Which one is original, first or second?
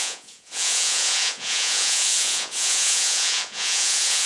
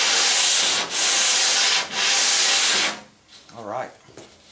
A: second